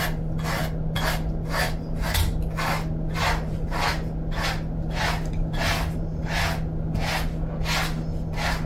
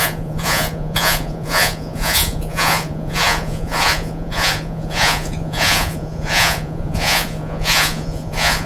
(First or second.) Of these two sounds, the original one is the first